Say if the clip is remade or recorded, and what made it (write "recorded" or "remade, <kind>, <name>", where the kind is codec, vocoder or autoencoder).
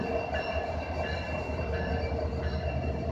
recorded